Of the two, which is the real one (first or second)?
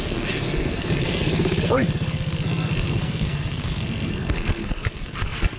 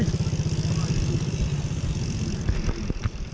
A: second